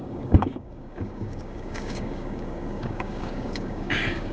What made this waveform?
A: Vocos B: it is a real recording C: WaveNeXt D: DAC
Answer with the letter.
D